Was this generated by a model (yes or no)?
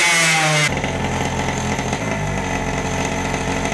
no